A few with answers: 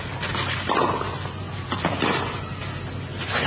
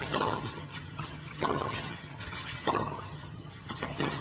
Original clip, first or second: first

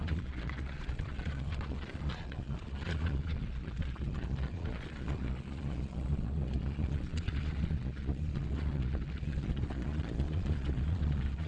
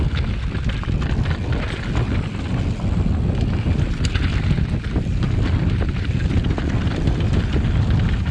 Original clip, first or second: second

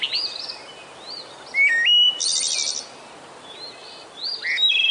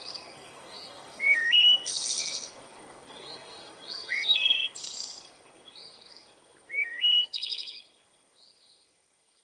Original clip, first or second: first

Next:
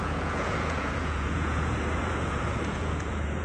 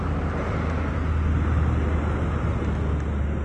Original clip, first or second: second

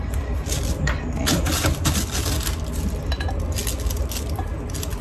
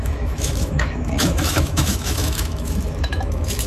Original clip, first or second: first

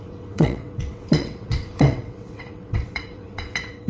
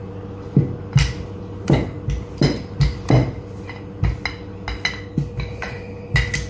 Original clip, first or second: second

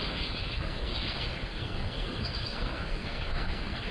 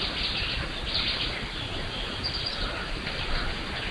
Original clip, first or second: second